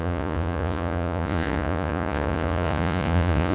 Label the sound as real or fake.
fake